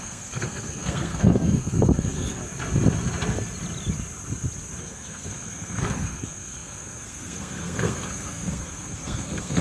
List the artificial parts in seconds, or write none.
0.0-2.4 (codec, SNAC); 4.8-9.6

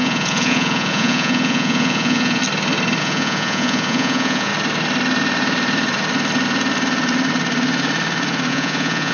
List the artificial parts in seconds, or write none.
0.0-2.4 (vocoder, Vocos); 3.0-4.5; 8.5-9.1

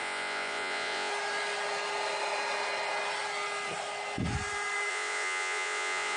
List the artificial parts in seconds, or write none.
0.0-1.1 (vocoder, Vocos); 4.9-6.2

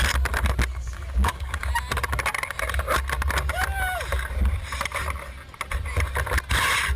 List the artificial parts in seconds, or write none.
0.7-1.7 (codec, DAC)